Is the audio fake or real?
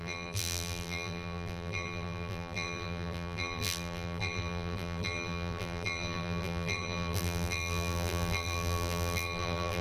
fake